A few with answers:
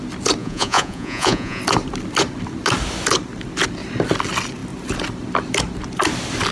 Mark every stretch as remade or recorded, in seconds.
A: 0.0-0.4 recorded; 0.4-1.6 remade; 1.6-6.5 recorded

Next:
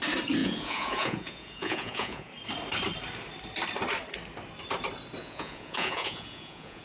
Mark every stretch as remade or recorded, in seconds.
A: 0.0-0.4 recorded; 0.4-2.3 remade; 2.3-5.2 recorded; 5.2-6.8 remade

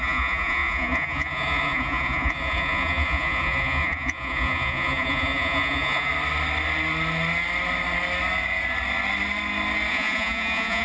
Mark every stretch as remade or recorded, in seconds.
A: 0.0-6.1 remade; 6.1-9.9 recorded; 9.9-10.8 remade

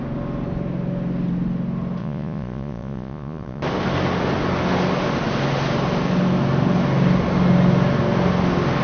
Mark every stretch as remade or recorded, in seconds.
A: 0.0-2.0 recorded; 2.0-3.6 remade; 3.6-8.8 recorded

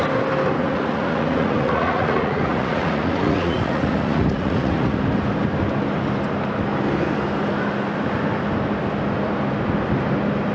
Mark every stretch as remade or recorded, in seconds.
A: 0.0-0.6 recorded; 0.6-5.0 remade; 5.0-10.5 recorded

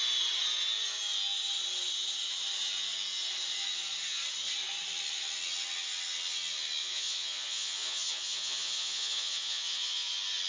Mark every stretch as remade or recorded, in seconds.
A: 0.0-6.8 recorded; 6.8-10.1 remade; 10.1-10.5 recorded

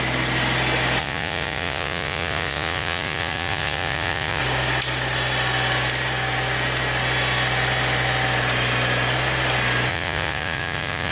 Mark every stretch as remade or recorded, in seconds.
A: 0.0-1.0 recorded; 1.0-4.4 remade; 4.4-9.9 recorded; 9.9-11.1 remade